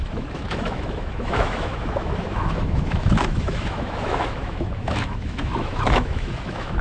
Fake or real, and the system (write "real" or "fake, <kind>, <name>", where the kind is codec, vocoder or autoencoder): fake, autoencoder, DAC-VAE